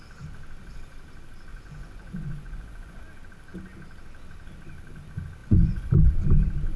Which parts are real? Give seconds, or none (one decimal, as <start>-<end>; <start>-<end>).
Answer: 0.0-1.5; 3.0-5.4; 6.1-6.8